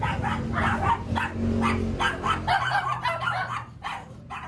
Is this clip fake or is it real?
real